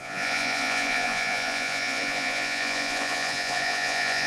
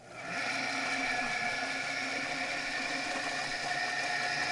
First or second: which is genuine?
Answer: second